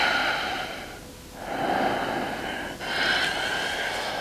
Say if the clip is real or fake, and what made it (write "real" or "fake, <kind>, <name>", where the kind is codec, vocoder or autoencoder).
real